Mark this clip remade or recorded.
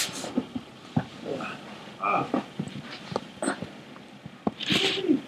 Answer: recorded